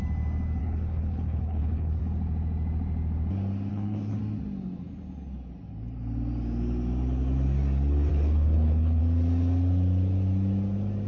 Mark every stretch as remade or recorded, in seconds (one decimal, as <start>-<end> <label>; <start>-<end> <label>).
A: 0.0-0.6 recorded; 0.6-2.0 remade; 2.0-3.7 recorded; 3.7-4.2 remade; 4.2-8.1 recorded; 8.1-9.0 remade; 9.0-11.1 recorded